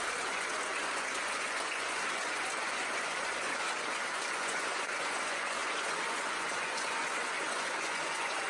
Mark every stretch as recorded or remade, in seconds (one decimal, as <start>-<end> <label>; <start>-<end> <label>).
0.0-8.5 remade